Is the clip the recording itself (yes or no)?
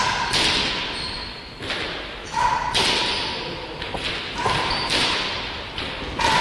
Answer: yes